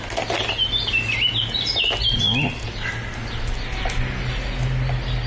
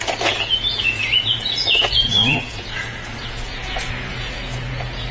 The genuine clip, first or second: first